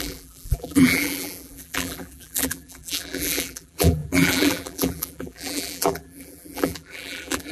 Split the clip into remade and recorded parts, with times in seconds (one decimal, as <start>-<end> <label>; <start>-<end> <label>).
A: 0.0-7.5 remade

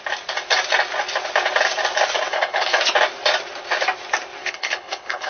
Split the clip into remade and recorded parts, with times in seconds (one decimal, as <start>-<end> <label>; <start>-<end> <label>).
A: 0.0-2.3 recorded; 2.3-2.8 remade; 2.8-4.4 recorded; 4.4-5.3 remade

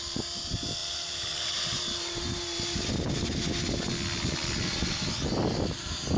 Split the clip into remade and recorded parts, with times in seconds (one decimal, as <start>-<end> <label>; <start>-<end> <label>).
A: 0.0-0.8 recorded; 0.8-3.9 remade; 3.9-6.2 recorded

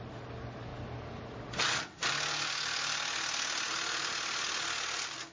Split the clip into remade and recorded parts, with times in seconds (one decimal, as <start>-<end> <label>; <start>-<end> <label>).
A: 0.0-5.3 recorded

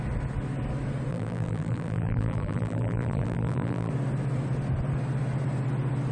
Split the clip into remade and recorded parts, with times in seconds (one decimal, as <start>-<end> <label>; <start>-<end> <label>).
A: 0.0-1.1 recorded; 1.1-3.9 remade; 3.9-6.1 recorded